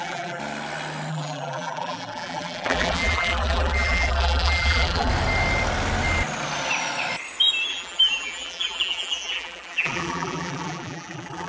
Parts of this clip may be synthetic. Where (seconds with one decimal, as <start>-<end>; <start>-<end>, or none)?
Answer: 0.0-0.4; 1.1-5.1; 7.7-11.5